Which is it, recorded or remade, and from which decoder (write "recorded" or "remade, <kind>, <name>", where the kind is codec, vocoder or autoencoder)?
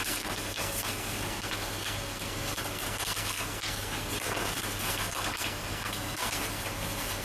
remade, codec, SNAC